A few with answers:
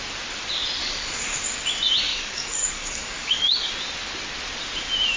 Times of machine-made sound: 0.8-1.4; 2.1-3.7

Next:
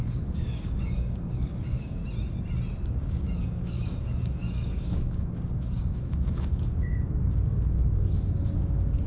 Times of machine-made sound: 0.0-2.0; 2.9-9.1

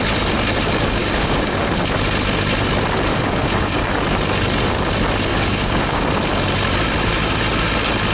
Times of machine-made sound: 1.0-1.7; 3.1-3.8; 5.3-6.1

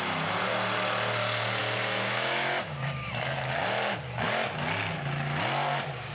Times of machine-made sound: 1.6-3.1

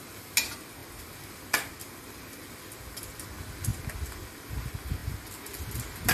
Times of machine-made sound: none

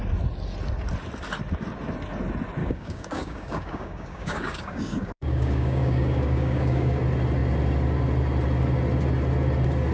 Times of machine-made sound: 2.6-7.0

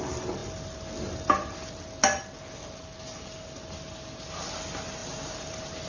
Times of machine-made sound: none